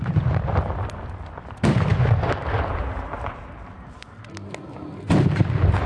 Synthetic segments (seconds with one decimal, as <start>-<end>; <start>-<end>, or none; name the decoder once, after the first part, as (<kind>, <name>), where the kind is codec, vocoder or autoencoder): 0.0-1.9 (vocoder, BigVGAN v2); 5.4-5.9